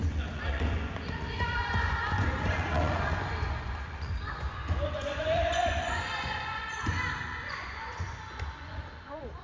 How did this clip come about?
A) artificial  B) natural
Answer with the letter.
A